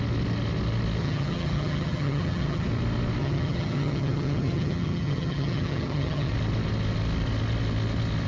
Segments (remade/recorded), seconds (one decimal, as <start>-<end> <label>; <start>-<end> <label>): 0.0-1.0 recorded; 1.0-2.7 remade; 2.7-3.2 recorded; 3.2-6.3 remade; 6.3-8.3 recorded